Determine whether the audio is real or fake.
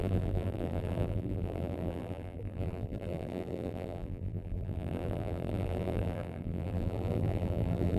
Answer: fake